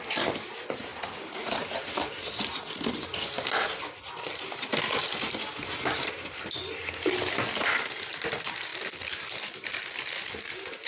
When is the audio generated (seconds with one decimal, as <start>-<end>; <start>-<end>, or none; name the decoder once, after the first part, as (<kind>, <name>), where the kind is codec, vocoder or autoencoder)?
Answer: none